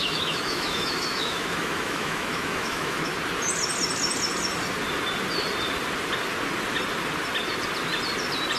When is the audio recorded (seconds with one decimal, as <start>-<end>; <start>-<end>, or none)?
3.1-8.6